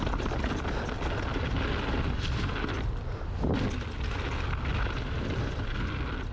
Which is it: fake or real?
real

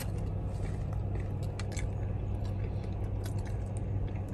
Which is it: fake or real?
real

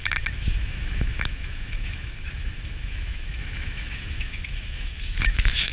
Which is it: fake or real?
fake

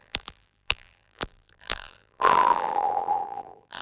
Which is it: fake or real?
fake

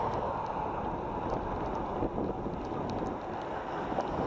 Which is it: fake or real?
real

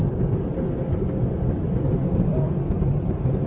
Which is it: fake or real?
real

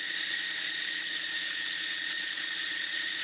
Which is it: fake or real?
real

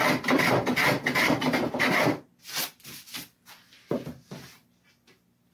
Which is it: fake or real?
real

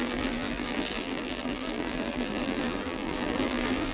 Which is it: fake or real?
fake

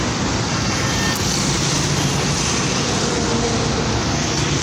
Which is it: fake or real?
real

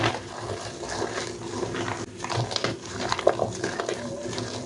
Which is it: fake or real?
real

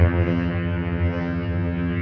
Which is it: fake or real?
fake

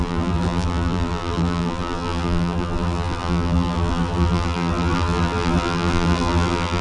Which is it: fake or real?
fake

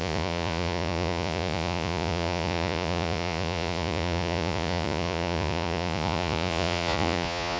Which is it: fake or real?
fake